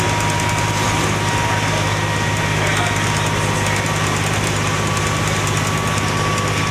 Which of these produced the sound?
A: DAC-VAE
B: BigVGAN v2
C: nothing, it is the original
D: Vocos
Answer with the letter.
C